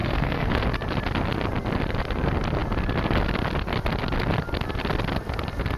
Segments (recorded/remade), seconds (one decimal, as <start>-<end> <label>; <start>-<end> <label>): 0.0-0.6 remade; 0.6-5.8 recorded